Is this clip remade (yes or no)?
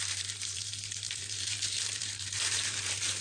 yes